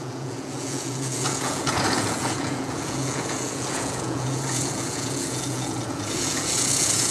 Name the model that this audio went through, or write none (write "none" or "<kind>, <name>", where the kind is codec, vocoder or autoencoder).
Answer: vocoder, Vocos